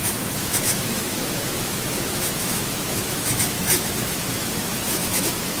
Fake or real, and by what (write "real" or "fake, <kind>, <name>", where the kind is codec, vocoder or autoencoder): fake, autoencoder, DAC-VAE